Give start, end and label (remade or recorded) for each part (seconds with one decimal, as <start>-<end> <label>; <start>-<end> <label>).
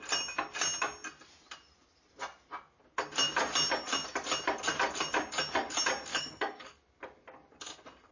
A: 0.0-6.1 recorded; 6.1-6.8 remade; 6.8-8.1 recorded